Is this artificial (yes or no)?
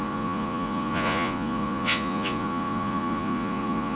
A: yes